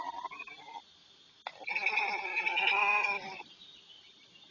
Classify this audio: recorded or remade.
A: recorded